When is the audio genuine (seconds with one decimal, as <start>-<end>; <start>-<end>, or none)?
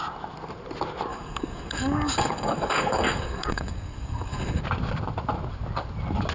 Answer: 0.0-1.1; 4.6-6.3